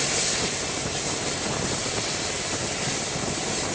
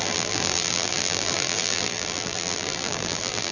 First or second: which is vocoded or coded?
second